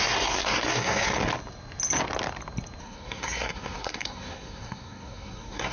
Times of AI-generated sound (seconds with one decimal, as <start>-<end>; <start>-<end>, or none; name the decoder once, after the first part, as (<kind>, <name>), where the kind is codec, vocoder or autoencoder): 0.0-1.1 (codec, SNAC); 2.8-5.7